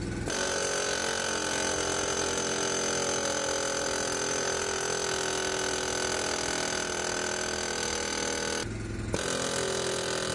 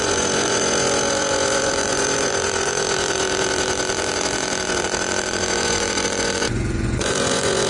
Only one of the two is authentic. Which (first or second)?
first